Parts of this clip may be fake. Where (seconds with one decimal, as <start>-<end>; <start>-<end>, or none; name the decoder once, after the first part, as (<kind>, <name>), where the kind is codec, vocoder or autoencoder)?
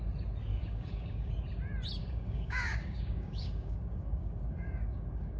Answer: 0.5-1.3 (codec, DAC); 2.0-5.4